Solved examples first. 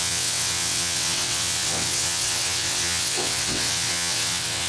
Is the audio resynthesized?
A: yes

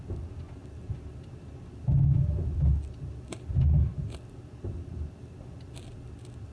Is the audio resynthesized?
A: no